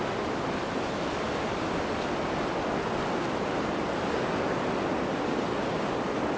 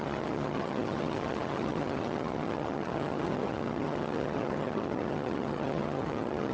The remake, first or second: second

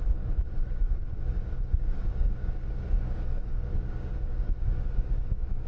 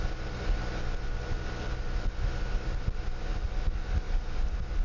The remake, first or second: first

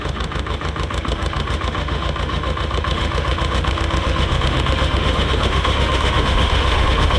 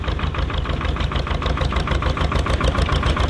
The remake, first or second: first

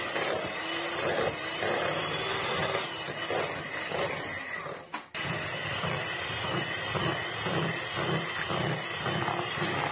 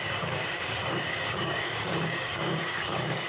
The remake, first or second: second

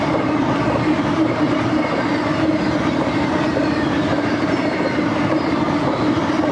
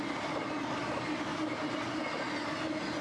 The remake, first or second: first